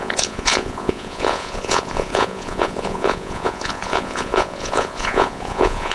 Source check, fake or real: fake